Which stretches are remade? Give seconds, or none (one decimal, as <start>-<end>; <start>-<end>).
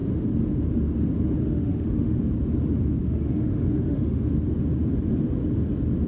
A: 1.4-2.2; 3.0-4.2